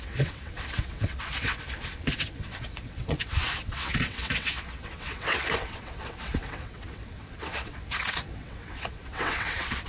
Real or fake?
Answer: fake